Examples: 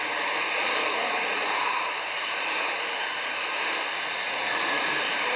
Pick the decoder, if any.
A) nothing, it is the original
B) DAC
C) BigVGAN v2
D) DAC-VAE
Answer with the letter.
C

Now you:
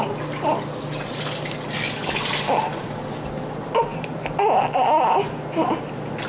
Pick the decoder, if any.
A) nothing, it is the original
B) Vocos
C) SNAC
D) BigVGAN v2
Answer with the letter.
A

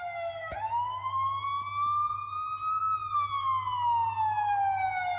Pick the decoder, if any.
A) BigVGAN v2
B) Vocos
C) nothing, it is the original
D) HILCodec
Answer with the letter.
C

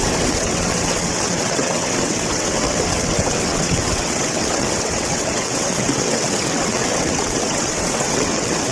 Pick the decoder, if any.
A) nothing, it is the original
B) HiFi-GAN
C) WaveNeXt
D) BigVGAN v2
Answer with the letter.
C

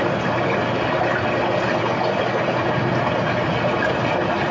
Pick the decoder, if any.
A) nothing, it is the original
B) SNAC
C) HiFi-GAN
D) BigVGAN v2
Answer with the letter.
A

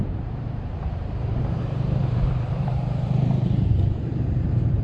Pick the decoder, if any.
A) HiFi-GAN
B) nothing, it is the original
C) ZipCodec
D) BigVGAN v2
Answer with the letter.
D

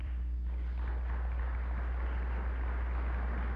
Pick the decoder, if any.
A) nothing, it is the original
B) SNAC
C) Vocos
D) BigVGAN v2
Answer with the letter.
D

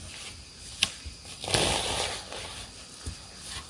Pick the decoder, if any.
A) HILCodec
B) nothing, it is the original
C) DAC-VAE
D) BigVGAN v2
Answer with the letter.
B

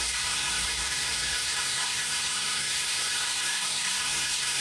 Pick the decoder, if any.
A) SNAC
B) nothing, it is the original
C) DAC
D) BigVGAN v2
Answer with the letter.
A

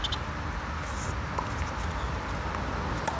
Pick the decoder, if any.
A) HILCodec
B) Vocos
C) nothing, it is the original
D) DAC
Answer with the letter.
C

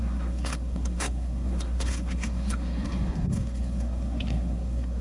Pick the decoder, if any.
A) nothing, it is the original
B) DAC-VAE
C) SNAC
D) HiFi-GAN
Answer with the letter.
C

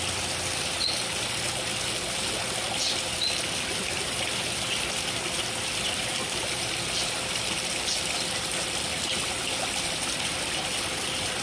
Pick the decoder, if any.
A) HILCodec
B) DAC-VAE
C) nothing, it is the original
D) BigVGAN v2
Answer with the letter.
C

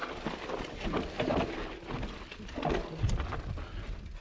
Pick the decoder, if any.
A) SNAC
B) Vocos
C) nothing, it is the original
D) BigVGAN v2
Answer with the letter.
C